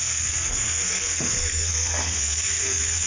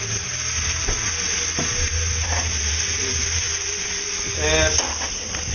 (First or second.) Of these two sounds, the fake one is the first